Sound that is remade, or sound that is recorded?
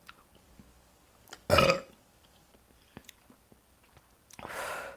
recorded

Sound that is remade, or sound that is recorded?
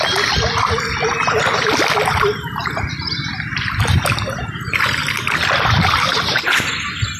recorded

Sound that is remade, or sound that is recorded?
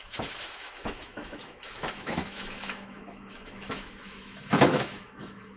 remade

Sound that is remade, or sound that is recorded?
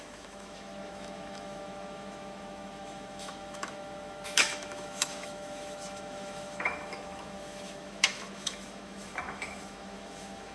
remade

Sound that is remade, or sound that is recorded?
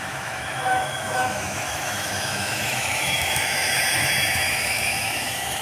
remade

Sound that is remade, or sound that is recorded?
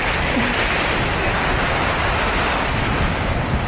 recorded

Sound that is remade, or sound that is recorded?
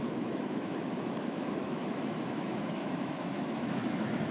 remade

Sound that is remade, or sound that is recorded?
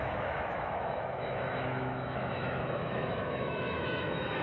remade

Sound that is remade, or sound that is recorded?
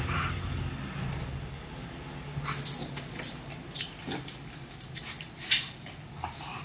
recorded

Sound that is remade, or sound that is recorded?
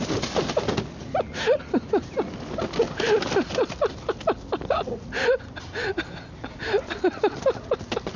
recorded